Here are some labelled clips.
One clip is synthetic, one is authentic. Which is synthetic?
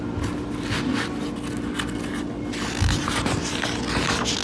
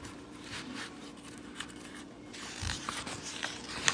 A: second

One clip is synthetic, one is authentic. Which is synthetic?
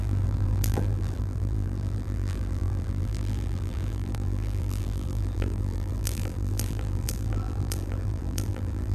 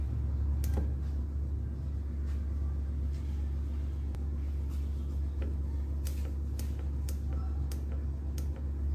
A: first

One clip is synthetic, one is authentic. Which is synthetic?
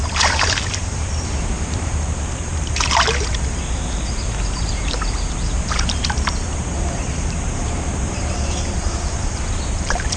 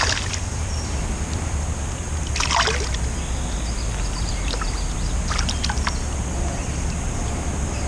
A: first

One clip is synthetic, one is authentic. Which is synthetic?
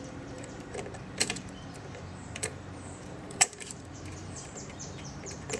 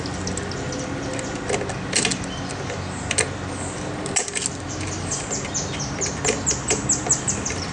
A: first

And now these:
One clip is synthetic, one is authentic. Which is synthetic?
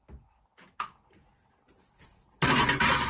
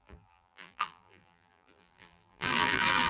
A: second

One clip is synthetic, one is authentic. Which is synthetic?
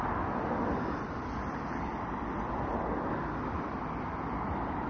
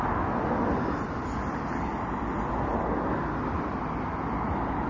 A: first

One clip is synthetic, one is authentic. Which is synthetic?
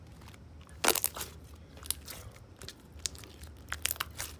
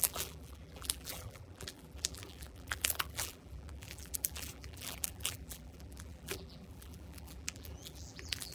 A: second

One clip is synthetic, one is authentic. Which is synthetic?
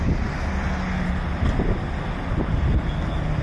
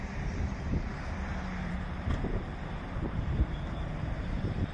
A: second